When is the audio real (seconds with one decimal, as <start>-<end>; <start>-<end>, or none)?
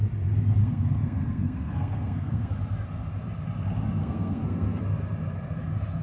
0.0-0.6; 2.5-4.0; 4.8-6.0